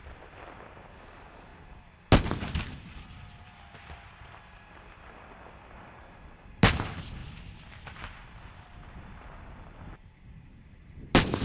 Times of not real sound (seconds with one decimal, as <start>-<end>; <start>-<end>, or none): none

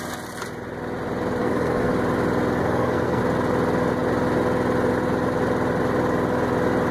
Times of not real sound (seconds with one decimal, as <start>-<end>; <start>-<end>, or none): 1.4-1.9; 2.6-3.2

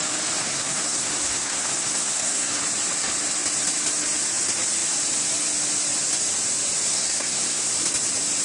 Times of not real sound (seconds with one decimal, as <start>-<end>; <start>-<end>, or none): 0.4-2.6; 6.9-7.7

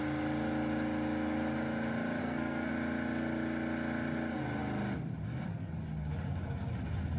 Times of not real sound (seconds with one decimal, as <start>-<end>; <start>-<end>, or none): 2.2-2.7

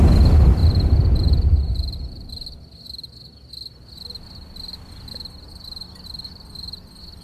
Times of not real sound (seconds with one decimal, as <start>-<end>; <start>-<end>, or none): 0.6-2.3

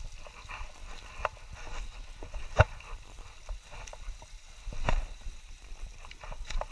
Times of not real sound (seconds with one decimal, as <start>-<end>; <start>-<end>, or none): 2.2-6.0